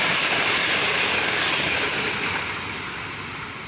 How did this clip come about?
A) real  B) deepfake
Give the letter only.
B